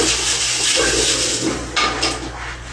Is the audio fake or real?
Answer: real